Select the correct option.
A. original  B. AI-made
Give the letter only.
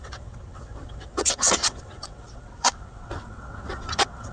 B